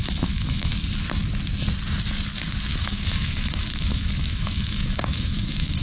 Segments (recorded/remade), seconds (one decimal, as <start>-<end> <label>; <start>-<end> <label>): 0.0-0.7 remade; 0.7-2.8 recorded; 2.8-5.8 remade